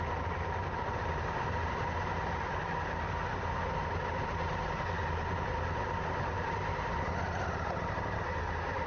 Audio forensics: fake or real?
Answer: real